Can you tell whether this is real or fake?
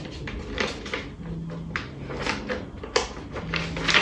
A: real